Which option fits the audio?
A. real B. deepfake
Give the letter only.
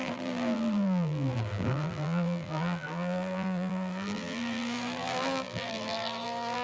B